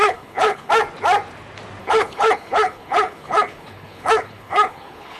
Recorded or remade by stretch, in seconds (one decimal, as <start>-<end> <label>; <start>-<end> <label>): 0.0-0.7 remade; 0.7-1.8 recorded; 1.8-5.2 remade

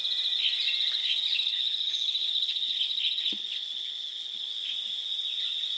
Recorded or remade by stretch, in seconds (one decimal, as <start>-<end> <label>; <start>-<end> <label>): 0.0-1.0 recorded; 1.0-4.5 remade; 4.5-5.8 recorded